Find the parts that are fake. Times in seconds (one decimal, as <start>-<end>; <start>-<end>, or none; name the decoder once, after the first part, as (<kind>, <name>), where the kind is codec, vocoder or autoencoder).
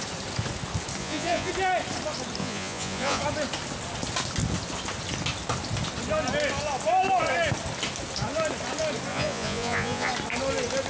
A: 1.0-1.5 (vocoder, Vocos); 2.4-3.2; 9.1-10.1